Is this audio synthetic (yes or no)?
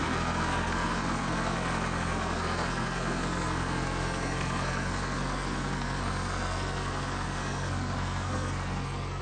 yes